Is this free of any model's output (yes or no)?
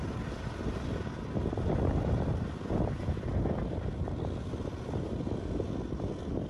yes